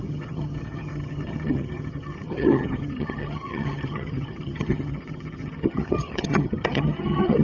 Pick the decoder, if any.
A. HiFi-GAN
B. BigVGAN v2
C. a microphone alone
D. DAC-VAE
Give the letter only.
A